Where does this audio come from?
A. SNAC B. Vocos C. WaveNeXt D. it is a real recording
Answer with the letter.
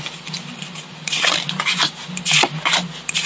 D